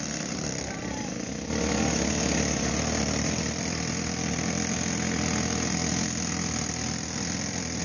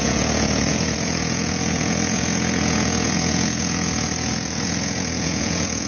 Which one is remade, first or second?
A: second